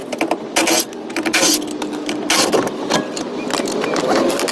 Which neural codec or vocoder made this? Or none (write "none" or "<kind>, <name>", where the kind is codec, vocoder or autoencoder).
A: none